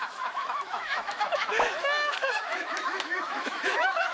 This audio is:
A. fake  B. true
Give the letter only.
A